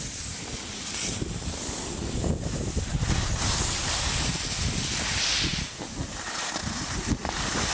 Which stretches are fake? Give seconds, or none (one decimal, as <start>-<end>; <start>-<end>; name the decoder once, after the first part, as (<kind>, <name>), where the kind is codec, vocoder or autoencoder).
none